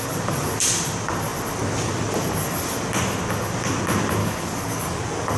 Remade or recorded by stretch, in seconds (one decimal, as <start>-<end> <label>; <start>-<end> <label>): 0.0-4.2 recorded; 4.2-5.0 remade; 5.0-5.4 recorded